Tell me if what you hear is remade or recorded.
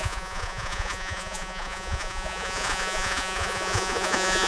remade